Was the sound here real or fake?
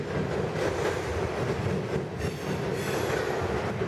real